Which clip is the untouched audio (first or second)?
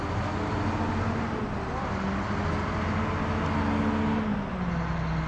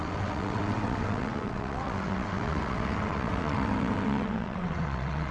first